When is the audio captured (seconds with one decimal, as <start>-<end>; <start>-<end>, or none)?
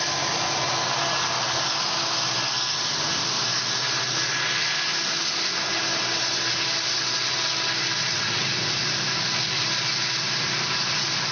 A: 0.0-8.0; 8.5-11.3